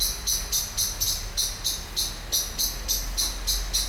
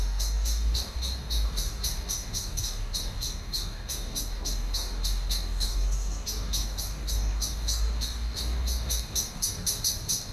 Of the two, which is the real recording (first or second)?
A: first